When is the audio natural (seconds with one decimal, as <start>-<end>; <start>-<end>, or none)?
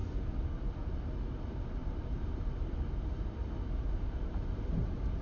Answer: 0.0-1.8